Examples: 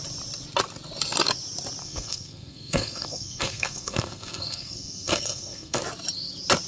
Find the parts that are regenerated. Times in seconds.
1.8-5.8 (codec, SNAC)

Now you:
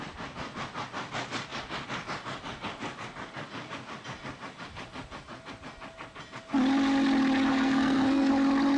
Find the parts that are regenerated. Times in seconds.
7.5-8.3 (codec, SNAC)

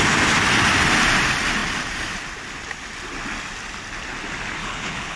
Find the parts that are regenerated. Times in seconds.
4.6-5.2 (codec, HILCodec)

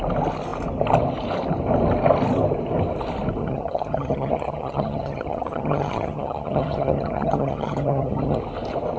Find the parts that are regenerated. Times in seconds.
3.4-8.4 (vocoder, HiFi-GAN)